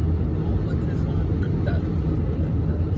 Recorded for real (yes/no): yes